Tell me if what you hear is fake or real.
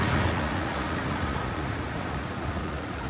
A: fake